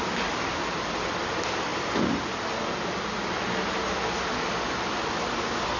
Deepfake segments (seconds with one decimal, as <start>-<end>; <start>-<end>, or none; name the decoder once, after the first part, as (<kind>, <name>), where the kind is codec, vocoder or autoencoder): none